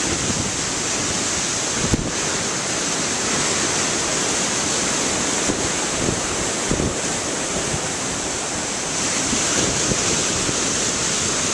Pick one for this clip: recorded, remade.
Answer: remade